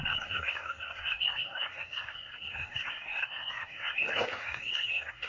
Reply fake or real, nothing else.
fake